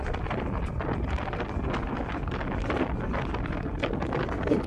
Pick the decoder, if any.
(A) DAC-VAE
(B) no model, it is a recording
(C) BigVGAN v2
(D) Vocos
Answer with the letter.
B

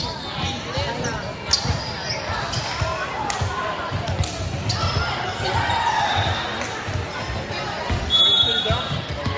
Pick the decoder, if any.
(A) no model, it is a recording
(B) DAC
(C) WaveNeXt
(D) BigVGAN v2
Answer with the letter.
A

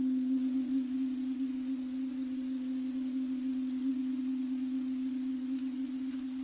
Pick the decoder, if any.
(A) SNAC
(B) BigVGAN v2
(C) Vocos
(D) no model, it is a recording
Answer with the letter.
C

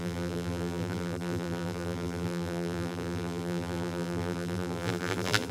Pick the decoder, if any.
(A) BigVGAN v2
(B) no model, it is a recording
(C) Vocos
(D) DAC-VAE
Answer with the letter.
A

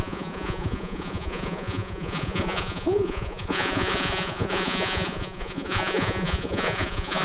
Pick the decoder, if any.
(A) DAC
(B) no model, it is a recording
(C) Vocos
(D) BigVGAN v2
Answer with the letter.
C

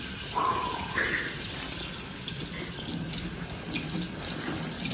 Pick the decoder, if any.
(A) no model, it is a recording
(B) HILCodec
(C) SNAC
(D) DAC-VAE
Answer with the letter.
A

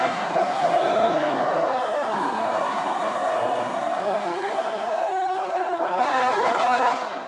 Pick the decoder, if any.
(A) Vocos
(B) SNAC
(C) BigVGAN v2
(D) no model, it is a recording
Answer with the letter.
B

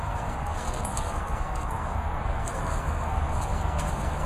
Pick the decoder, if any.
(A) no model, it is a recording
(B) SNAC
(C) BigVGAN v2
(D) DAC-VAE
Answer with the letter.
B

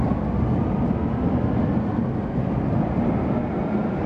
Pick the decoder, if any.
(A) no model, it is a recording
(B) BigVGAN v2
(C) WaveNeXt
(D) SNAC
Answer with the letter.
A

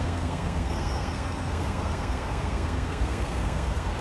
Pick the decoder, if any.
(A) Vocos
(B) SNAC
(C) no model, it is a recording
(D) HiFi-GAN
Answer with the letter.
B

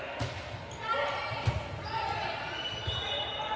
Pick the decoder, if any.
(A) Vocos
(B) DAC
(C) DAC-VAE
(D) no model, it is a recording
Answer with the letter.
D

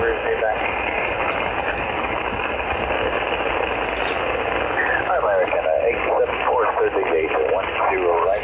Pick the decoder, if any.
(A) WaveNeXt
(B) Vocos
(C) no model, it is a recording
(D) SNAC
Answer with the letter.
C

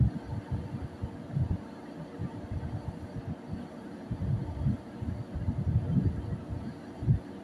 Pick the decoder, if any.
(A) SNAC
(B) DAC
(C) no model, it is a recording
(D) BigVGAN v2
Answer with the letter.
C